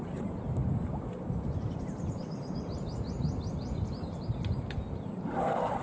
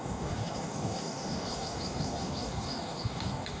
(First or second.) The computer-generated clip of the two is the second